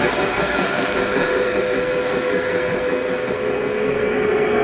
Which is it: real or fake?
fake